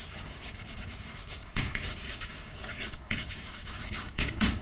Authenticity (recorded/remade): remade